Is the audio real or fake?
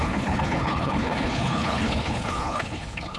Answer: fake